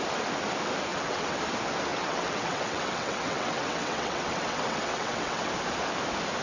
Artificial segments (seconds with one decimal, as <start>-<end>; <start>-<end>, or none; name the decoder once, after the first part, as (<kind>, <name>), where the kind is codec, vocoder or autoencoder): 0.9-1.4 (vocoder, WaveNeXt); 1.9-5.5